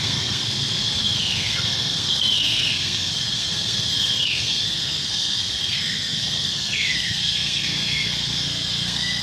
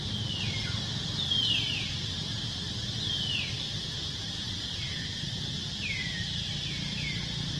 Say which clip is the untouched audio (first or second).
second